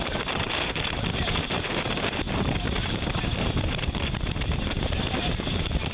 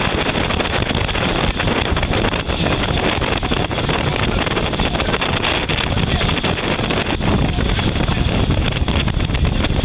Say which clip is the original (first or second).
second